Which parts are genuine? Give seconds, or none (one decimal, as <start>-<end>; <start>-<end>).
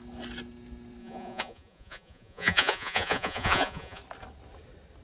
0.0-1.0; 4.0-5.0